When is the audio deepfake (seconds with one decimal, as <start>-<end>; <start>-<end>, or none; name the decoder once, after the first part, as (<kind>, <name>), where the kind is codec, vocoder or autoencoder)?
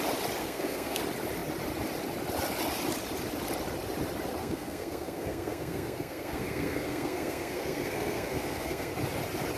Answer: 0.4-1.0 (codec, SNAC); 4.4-8.9